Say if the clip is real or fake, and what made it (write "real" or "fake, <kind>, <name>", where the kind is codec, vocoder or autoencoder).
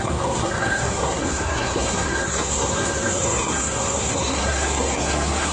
fake, codec, SNAC